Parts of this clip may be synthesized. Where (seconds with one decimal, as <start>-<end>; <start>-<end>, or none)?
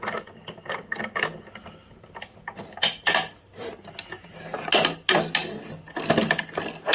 none